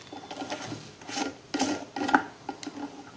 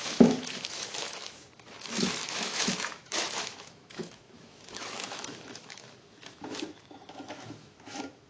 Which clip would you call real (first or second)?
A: first